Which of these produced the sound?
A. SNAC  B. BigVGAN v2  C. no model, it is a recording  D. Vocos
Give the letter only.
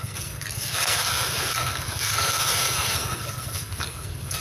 A